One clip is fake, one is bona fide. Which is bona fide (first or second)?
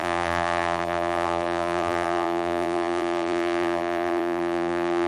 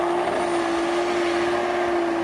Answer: second